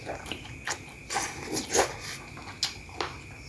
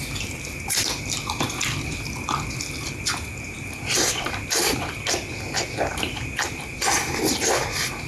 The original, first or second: first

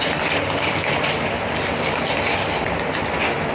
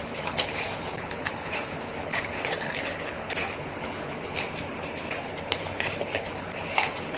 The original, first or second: first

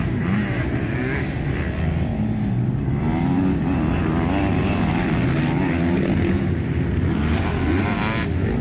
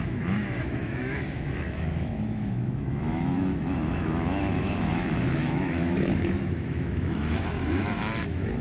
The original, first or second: first